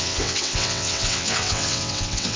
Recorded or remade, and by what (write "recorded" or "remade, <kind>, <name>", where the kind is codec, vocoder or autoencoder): remade, vocoder, WaveNeXt